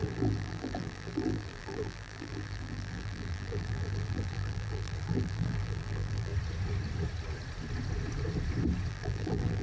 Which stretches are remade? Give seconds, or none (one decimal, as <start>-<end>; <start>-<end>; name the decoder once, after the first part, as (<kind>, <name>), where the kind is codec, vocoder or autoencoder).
0.0-6.3 (vocoder, BigVGAN v2); 8.9-9.6